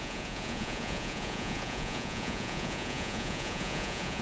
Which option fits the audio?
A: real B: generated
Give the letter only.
B